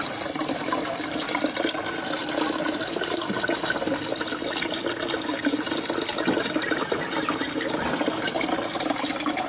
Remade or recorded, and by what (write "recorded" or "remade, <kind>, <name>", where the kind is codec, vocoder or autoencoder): recorded